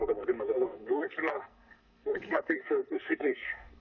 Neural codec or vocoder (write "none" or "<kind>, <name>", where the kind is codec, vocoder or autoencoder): codec, SNAC